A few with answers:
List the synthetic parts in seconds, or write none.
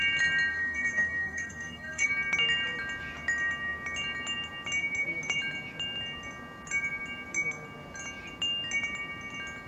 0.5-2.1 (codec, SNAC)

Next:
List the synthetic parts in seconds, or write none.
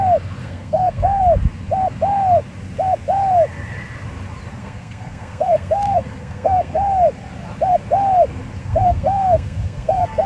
0.4-1.2 (codec, SNAC); 4.6-6.8; 8.6-10.3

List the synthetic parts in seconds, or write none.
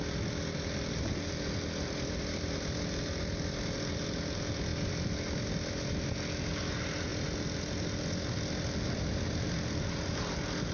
none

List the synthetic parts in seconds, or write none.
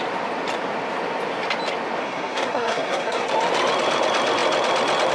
2.0-3.3 (codec, SNAC)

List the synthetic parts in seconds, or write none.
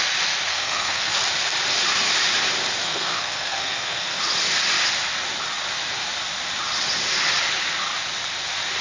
0.5-1.1 (codec, SNAC); 2.8-4.2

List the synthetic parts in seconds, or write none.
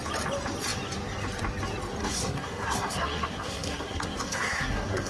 2.0-5.1 (codec, SNAC)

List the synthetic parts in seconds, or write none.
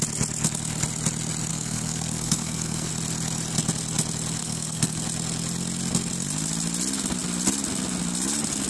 1.5-2.9 (codec, SNAC); 4.4-5.0